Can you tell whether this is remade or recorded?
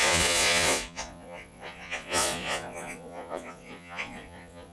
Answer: remade